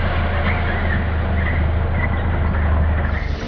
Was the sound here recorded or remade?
recorded